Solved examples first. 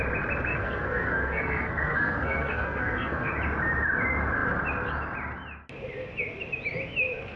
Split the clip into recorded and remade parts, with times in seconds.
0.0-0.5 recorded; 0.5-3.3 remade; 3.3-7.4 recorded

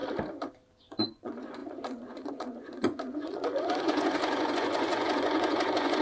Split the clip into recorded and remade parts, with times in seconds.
0.0-0.8 recorded; 0.8-6.0 remade

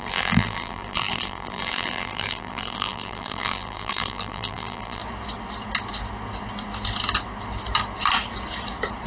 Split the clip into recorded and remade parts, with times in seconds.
0.0-5.0 remade; 5.0-9.1 recorded

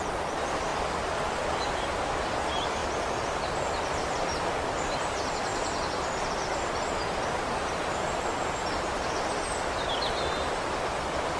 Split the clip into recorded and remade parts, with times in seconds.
0.0-0.7 remade; 0.7-1.3 recorded; 1.3-11.4 remade

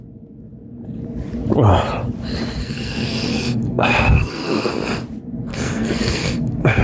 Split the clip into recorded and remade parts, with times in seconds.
0.0-2.6 recorded; 2.6-4.7 remade; 4.7-5.5 recorded; 5.5-6.8 remade